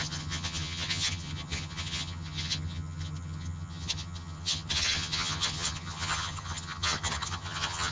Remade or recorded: remade